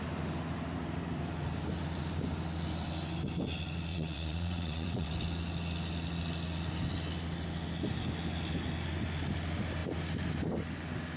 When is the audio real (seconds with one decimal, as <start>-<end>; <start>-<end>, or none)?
0.0-3.9; 5.1-11.2